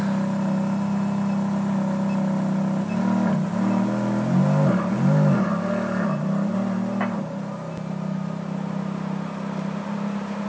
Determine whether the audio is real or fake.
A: real